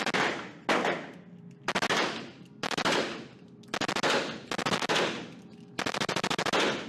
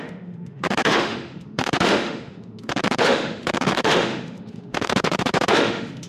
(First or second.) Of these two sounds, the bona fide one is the first